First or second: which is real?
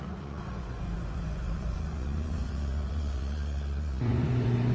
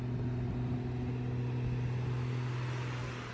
second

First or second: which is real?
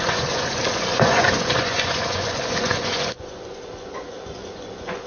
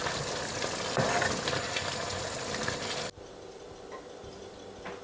second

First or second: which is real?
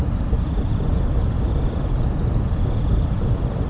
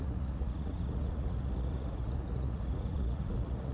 first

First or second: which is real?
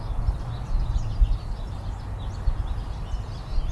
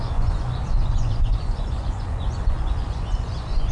first